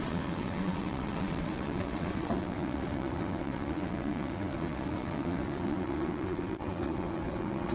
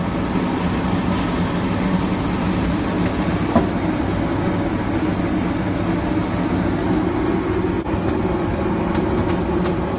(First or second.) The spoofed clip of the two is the first